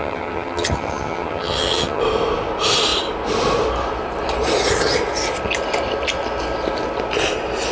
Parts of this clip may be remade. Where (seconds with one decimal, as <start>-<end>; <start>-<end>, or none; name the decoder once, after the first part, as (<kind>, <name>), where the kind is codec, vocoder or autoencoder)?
0.0-2.0 (vocoder, HiFi-GAN)

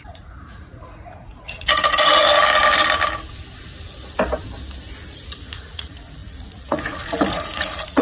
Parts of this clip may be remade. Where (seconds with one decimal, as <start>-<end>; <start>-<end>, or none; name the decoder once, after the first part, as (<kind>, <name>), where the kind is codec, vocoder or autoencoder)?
0.0-2.1 (vocoder, Vocos); 5.2-8.0

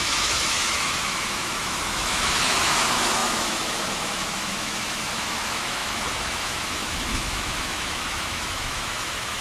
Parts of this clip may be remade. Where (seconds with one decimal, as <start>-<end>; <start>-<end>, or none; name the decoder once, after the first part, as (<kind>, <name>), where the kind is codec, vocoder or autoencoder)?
0.0-9.4 (autoencoder, DAC-VAE)

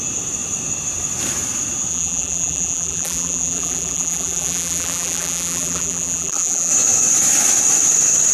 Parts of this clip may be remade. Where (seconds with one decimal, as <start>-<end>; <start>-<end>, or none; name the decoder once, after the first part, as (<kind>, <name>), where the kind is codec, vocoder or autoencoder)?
1.9-6.7 (vocoder, BigVGAN v2)